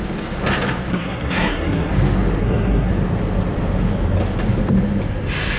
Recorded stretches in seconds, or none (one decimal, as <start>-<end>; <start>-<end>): 0.0-0.9; 1.9-2.4; 2.9-5.6